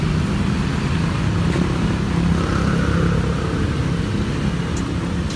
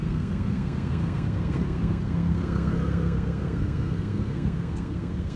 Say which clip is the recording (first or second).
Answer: first